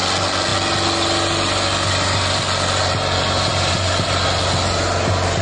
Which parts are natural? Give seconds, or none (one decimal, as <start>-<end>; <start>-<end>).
0.0-5.4